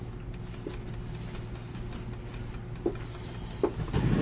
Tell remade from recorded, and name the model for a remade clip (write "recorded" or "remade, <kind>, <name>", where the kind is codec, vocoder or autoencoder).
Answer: recorded